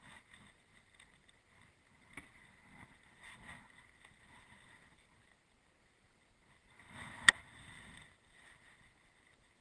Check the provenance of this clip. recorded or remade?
recorded